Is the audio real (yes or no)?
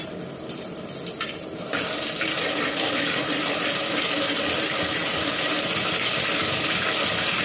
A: yes